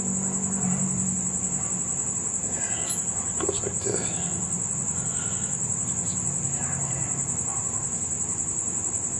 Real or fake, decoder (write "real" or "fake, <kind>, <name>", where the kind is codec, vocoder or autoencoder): real